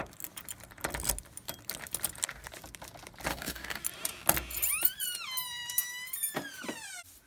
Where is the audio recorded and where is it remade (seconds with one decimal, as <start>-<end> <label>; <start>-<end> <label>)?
0.0-3.3 recorded; 3.3-3.8 remade; 3.8-7.3 recorded